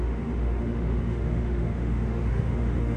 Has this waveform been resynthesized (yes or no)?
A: yes